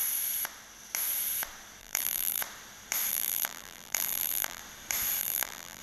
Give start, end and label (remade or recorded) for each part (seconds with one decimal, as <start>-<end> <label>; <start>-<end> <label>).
0.0-1.8 recorded; 1.8-2.4 remade; 2.4-3.1 recorded; 3.1-4.6 remade; 4.6-5.2 recorded; 5.2-5.8 remade